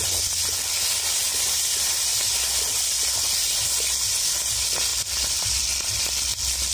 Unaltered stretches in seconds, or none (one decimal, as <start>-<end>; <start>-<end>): 0.0-6.7